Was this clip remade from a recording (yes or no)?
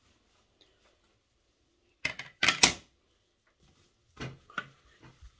no